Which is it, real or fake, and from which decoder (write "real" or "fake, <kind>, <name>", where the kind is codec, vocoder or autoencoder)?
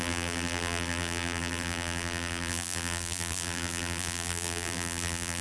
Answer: fake, vocoder, BigVGAN v2